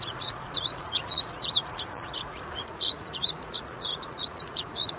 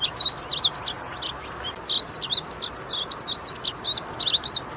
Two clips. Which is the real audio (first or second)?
second